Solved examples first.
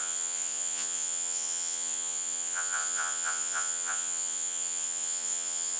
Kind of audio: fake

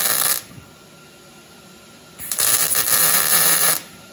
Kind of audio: fake